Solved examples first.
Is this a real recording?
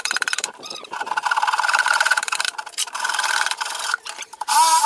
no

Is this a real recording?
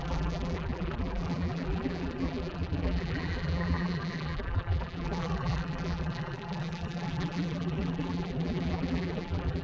no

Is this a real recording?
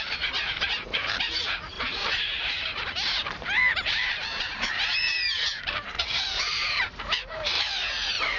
no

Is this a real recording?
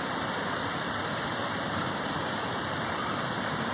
no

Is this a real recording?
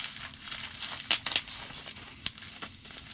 yes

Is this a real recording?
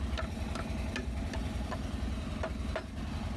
yes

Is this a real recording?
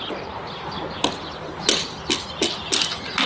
yes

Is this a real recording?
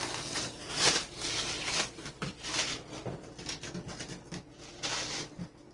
yes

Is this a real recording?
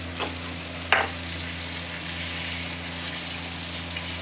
yes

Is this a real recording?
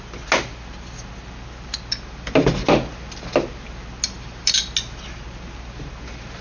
yes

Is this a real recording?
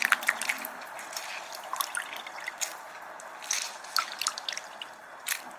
no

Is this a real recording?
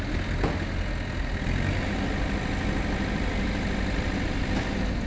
yes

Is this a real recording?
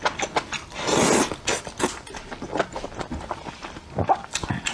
yes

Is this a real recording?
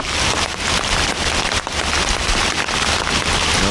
no